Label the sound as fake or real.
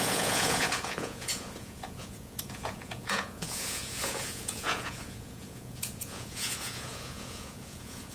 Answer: fake